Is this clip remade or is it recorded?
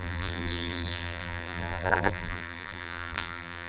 remade